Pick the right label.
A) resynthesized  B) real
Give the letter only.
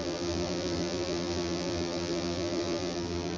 A